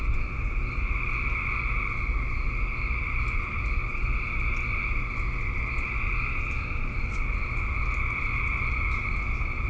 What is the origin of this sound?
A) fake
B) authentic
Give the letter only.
B